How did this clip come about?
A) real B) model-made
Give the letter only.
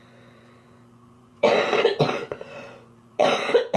B